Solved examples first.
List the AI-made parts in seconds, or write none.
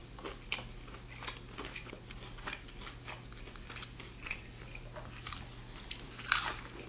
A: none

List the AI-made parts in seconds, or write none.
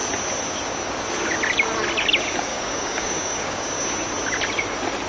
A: 2.5-3.8 (codec, DAC)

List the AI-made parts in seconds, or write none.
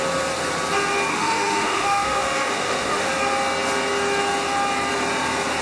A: 1.1-3.1 (autoencoder, DAC-VAE)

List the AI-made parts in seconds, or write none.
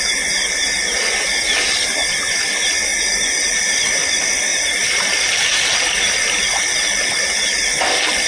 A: 2.9-3.7 (vocoder, BigVGAN v2); 4.5-6.1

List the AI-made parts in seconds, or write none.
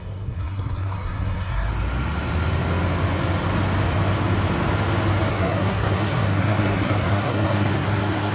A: 0.0-1.7 (codec, SNAC); 5.3-8.3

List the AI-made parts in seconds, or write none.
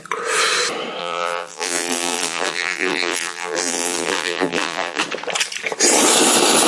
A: 1.0-5.0 (vocoder, BigVGAN v2)